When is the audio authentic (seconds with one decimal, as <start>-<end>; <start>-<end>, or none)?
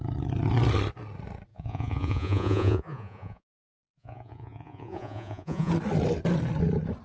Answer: 0.0-1.5; 5.7-7.0